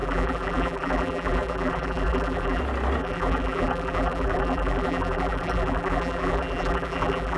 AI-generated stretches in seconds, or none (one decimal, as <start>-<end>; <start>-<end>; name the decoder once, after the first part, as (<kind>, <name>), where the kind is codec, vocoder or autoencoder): 0.0-2.6 (vocoder, BigVGAN v2); 3.0-7.4